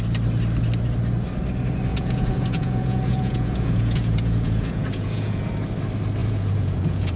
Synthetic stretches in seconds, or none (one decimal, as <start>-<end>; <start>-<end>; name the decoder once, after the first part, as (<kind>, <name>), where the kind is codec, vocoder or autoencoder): 1.9-5.5 (vocoder, Vocos); 6.2-7.2